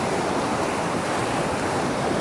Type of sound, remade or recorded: recorded